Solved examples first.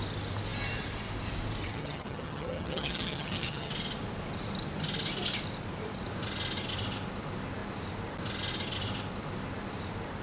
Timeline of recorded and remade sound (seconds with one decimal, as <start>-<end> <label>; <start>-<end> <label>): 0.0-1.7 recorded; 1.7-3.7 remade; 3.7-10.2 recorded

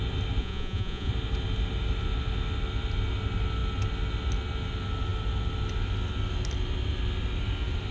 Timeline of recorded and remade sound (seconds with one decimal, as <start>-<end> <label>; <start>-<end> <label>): 0.0-0.4 recorded; 0.4-1.1 remade; 1.1-7.9 recorded

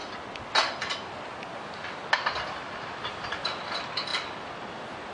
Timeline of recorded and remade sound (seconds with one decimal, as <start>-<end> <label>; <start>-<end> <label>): 0.0-5.1 recorded

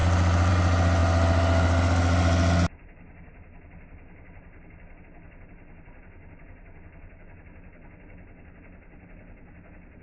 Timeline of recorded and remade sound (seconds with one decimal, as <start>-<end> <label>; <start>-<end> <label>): 0.0-10.0 recorded

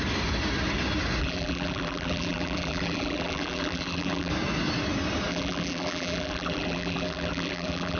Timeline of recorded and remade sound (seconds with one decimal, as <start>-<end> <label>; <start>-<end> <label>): 0.0-1.2 recorded; 1.2-4.3 remade; 4.3-5.3 recorded; 5.3-8.0 remade